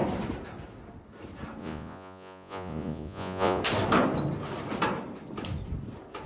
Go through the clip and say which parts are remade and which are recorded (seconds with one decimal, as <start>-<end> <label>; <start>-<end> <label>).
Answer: 0.0-1.6 recorded; 1.6-3.6 remade; 3.6-6.3 recorded